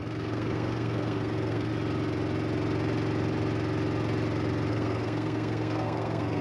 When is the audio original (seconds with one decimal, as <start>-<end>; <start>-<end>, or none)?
1.7-4.7